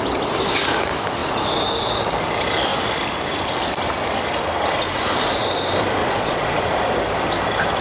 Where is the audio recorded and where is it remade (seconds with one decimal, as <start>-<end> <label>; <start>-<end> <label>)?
0.0-6.0 recorded; 6.0-6.8 remade; 6.8-7.8 recorded